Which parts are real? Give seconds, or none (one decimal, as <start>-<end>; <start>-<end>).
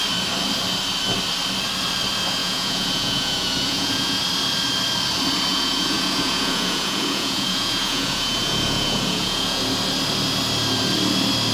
0.0-2.4; 4.2-5.5; 9.6-11.5